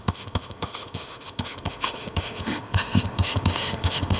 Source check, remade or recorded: remade